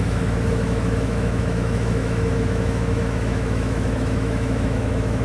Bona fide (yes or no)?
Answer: no